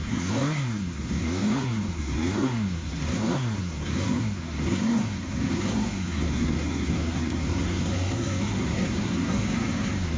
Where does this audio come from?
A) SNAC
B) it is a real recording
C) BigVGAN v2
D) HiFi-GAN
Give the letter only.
A